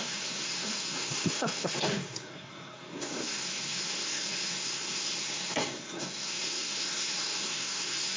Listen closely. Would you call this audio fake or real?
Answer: fake